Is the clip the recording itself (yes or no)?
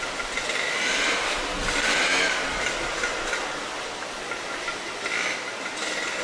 yes